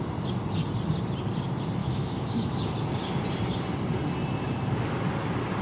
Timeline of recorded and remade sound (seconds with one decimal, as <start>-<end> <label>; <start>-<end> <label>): 0.0-1.8 recorded; 1.8-2.6 remade; 2.6-5.6 recorded